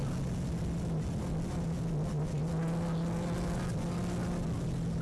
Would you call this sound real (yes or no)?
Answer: yes